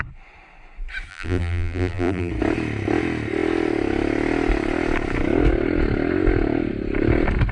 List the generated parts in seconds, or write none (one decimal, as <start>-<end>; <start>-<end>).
1.1-2.3